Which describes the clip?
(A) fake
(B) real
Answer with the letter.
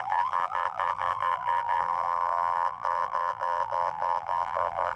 A